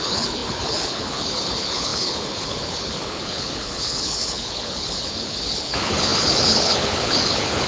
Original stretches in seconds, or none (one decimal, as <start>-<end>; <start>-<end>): none